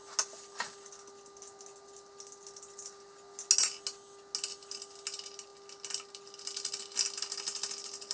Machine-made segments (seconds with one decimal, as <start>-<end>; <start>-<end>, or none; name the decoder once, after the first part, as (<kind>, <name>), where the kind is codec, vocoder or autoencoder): none